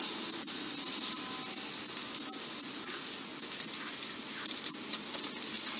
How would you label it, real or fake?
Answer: real